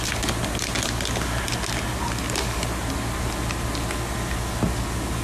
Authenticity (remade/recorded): recorded